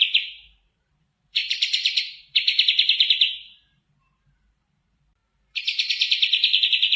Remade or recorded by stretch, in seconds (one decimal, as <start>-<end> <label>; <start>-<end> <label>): 0.0-1.4 remade; 1.4-2.0 recorded; 2.0-7.0 remade